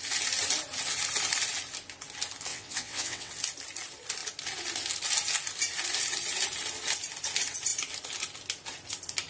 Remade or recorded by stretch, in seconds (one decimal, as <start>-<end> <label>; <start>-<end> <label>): 0.0-2.5 recorded; 2.5-3.3 remade; 3.3-9.3 recorded